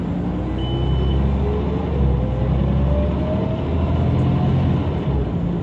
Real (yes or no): yes